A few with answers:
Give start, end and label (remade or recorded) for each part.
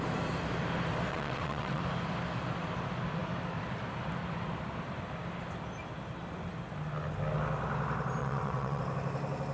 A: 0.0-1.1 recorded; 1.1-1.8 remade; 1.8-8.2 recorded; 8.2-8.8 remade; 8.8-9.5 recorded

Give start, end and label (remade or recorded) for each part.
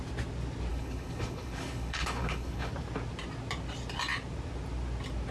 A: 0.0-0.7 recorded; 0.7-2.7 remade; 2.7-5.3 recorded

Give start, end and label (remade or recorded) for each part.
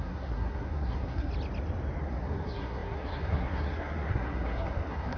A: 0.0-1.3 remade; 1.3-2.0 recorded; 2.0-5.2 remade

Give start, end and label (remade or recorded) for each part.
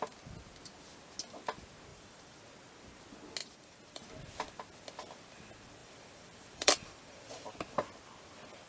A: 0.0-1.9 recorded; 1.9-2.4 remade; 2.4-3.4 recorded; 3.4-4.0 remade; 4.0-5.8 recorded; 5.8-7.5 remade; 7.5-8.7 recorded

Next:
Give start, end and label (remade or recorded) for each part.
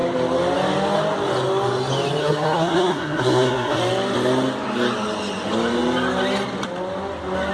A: 0.0-2.2 recorded; 2.2-3.8 remade; 3.8-7.5 recorded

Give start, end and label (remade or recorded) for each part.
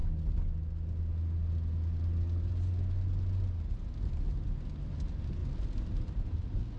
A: 0.0-6.8 recorded